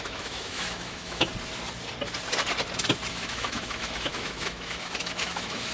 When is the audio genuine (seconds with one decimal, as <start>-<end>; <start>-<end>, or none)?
1.3-3.1